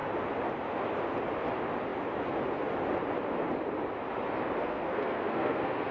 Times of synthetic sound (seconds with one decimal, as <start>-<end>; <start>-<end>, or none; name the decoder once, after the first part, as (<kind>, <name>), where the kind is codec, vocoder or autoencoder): 4.6-5.9 (codec, SNAC)